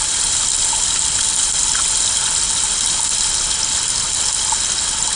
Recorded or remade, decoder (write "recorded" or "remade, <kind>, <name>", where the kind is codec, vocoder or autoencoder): recorded